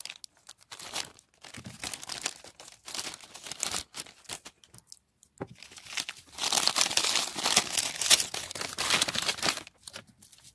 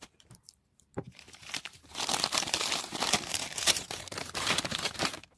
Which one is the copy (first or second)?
second